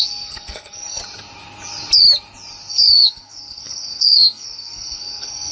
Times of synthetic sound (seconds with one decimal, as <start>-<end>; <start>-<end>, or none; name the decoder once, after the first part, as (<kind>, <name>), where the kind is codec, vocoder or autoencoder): 0.0-1.0 (codec, SNAC); 2.7-5.5